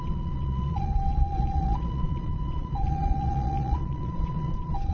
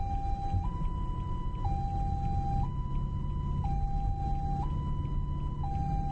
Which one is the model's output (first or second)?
first